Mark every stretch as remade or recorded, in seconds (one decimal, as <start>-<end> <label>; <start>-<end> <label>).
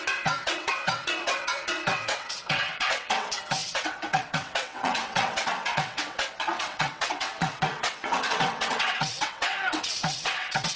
0.0-10.8 remade